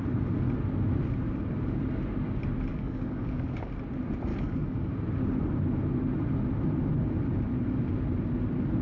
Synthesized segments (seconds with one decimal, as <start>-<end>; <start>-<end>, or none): 2.7-3.7; 4.3-4.9